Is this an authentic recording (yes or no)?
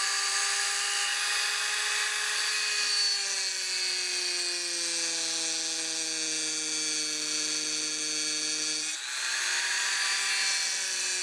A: yes